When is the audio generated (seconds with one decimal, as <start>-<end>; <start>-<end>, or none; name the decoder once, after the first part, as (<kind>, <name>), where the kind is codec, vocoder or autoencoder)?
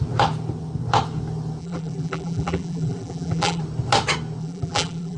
1.6-3.6 (vocoder, BigVGAN v2); 4.4-5.2